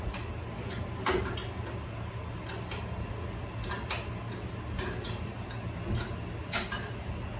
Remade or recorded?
recorded